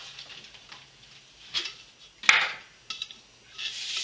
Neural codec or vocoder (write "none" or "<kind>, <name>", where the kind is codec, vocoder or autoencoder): none